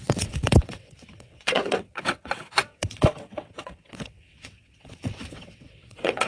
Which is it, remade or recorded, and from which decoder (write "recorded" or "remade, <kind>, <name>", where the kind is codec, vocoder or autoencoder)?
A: remade, vocoder, WaveNeXt